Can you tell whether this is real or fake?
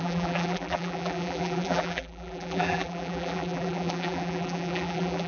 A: fake